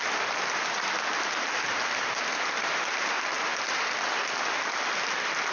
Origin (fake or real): real